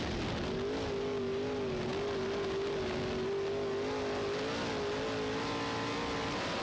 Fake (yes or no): no